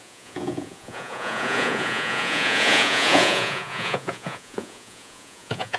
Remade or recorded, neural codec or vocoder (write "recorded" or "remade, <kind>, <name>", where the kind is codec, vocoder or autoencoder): remade, vocoder, Vocos